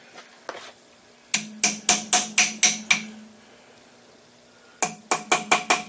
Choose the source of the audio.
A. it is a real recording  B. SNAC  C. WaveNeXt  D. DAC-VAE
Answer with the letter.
A